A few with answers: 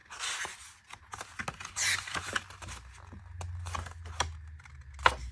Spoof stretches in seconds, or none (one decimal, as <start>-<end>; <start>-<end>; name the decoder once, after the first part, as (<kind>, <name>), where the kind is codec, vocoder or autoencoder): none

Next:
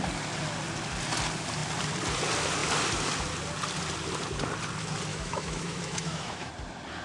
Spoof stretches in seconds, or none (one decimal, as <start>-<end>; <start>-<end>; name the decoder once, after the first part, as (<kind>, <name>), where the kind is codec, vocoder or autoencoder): 5.1-6.5 (autoencoder, DAC-VAE)

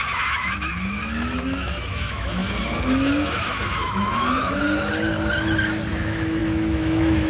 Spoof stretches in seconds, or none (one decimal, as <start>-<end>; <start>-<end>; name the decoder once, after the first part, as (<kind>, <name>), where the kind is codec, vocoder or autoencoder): 0.0-4.6 (autoencoder, DAC-VAE); 5.9-7.3

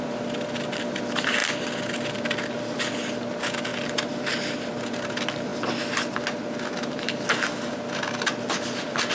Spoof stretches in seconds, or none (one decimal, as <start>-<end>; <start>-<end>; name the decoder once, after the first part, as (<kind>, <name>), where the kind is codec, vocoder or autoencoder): none

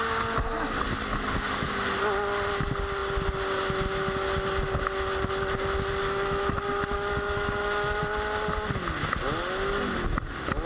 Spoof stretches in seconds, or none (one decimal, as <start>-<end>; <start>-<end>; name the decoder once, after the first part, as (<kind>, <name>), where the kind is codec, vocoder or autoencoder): 1.1-1.7 (autoencoder, DAC-VAE); 6.0-8.0